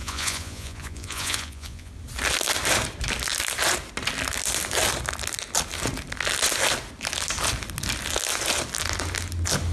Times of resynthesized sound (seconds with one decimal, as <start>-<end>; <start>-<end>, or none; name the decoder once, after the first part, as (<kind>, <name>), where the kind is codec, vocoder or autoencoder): 0.0-1.9 (vocoder, Vocos)